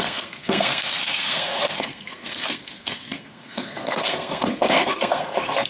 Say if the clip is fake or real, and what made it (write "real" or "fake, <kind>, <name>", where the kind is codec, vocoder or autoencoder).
fake, codec, SNAC